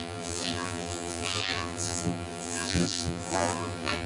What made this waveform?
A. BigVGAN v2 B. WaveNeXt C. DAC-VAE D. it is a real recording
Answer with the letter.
A